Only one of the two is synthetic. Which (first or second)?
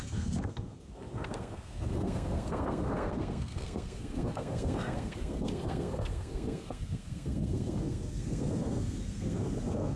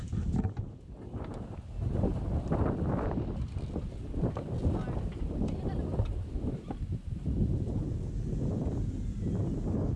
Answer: first